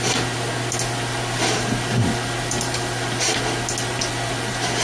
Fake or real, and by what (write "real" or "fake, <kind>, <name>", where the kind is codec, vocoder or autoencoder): real